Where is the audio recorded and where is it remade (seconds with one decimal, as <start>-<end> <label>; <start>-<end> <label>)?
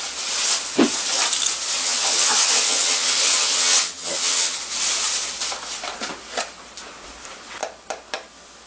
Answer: 0.0-1.8 recorded; 1.8-4.6 remade; 4.6-8.7 recorded